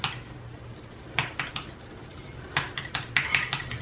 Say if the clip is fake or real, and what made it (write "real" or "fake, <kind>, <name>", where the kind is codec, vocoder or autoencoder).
real